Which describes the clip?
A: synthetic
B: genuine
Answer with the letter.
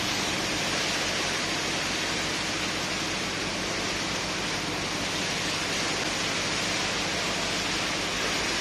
B